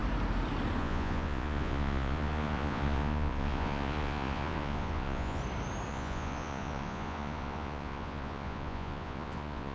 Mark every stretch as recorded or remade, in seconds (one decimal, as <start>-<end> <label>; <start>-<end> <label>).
0.0-0.8 recorded; 0.8-5.4 remade; 5.4-5.9 recorded; 5.9-9.7 remade